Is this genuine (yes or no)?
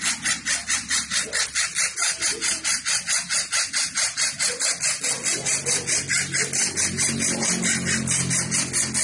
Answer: yes